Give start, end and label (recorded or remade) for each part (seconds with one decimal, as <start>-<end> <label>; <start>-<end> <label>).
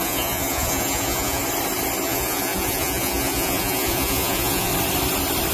0.0-1.4 remade; 1.4-2.0 recorded; 2.0-4.7 remade; 4.7-5.5 recorded